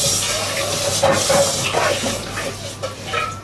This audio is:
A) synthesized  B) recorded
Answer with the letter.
B